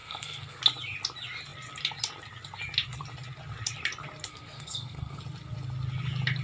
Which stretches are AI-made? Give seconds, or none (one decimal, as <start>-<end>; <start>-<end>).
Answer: 0.0-0.6; 4.3-5.2